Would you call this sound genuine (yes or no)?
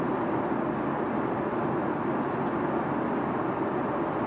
yes